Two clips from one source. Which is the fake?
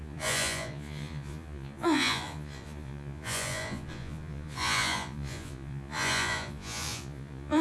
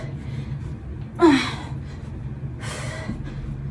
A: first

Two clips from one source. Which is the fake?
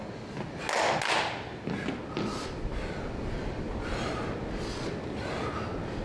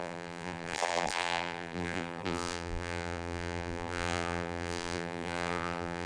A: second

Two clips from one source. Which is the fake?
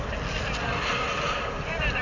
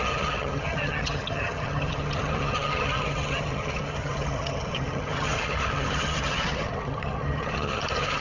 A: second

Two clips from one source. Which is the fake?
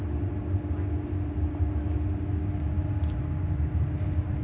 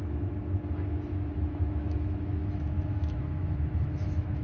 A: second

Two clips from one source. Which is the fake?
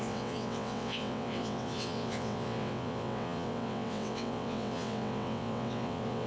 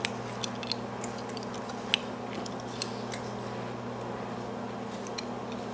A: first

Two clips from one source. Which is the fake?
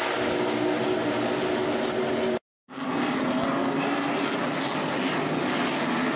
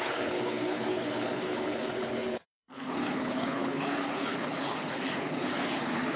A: second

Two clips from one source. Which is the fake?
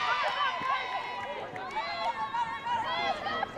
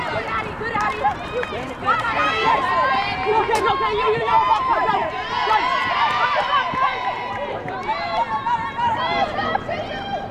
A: second